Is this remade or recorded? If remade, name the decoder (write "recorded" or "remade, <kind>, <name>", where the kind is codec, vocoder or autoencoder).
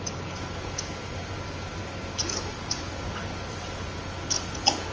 recorded